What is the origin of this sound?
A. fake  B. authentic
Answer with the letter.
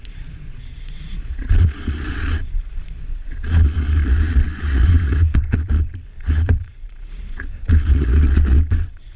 A